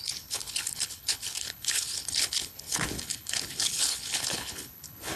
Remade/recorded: remade